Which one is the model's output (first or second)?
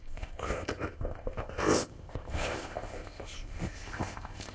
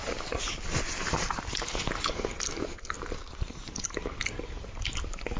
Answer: first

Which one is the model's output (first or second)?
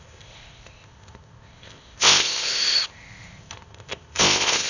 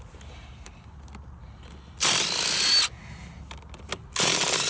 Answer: first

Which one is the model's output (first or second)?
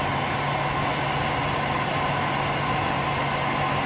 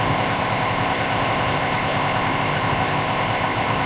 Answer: second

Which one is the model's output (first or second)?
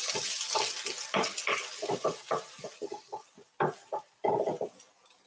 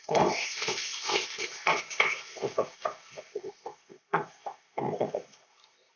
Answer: second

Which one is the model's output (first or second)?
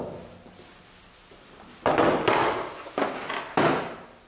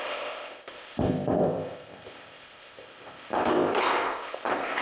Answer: second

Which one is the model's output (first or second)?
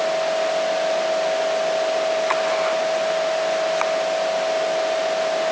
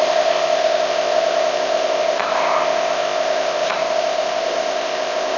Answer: second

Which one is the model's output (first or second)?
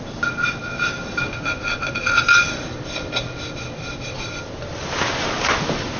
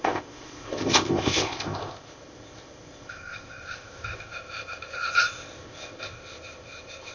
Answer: second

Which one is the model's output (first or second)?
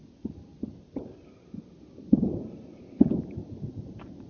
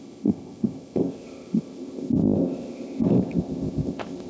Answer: second